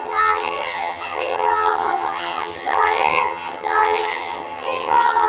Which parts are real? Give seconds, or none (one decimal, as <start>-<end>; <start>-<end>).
none